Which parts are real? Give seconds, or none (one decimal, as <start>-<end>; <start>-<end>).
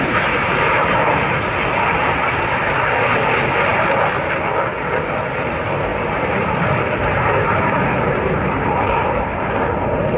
0.0-5.9; 9.5-10.2